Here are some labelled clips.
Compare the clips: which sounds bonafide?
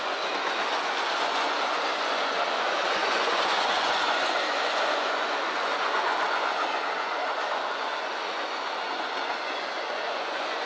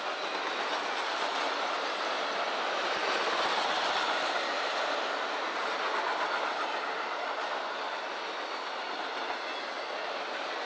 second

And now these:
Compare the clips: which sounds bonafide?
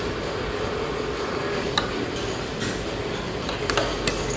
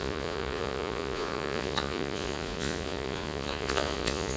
first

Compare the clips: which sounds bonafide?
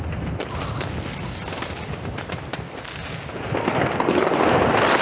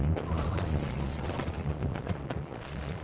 first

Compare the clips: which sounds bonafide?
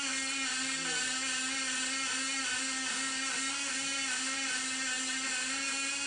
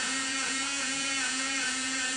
first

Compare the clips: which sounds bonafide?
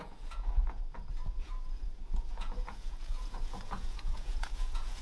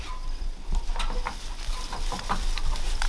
second